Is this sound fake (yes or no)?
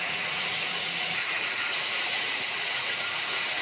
yes